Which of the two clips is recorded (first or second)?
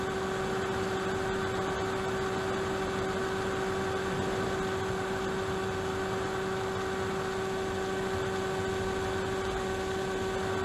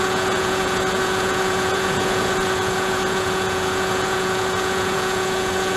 first